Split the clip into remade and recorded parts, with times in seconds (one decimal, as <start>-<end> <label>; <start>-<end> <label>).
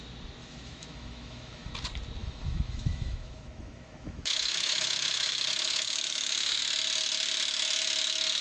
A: 0.0-0.4 recorded; 0.4-1.7 remade; 1.7-2.2 recorded; 2.2-6.6 remade; 6.6-8.4 recorded